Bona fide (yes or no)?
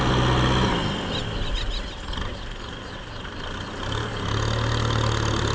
yes